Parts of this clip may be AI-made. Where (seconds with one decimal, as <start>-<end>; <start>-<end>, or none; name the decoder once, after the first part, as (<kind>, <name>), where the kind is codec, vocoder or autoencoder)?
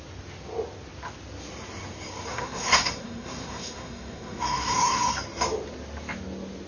2.3-5.1 (codec, SNAC)